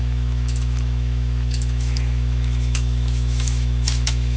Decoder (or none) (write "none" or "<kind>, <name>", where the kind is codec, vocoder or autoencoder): autoencoder, DAC-VAE